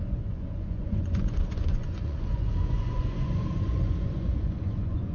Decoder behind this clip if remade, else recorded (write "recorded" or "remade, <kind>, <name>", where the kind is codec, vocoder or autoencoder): remade, vocoder, Vocos